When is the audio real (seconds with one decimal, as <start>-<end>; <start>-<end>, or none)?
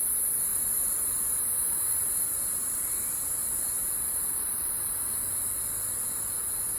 0.0-6.8